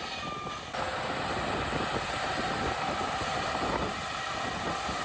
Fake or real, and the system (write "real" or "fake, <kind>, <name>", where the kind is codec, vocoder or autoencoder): real